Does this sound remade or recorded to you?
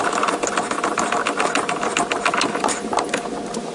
recorded